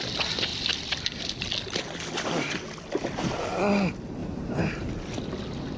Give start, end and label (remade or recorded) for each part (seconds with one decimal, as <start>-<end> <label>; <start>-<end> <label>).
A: 0.0-4.2 recorded; 4.2-4.9 remade; 4.9-5.8 recorded